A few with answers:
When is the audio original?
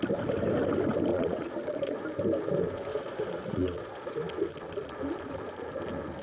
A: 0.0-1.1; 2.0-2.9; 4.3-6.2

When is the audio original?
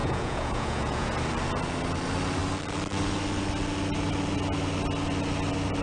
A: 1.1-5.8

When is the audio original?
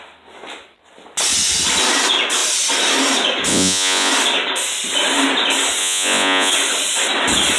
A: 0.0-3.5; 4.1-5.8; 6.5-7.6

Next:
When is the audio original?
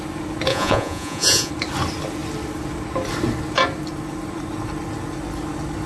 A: 0.0-0.5; 1.5-5.9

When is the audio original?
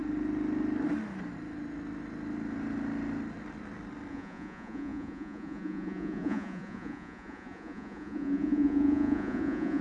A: 0.0-4.1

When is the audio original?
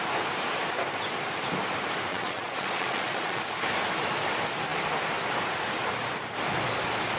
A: 0.0-2.1; 3.4-7.2